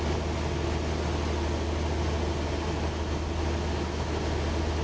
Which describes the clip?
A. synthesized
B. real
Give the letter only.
B